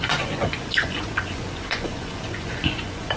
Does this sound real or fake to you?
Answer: fake